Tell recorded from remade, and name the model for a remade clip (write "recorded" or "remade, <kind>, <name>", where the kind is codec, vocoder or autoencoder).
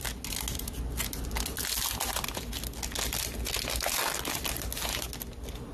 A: recorded